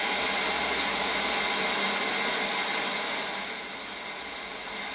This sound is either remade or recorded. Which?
recorded